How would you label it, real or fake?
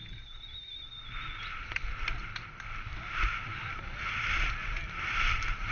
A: fake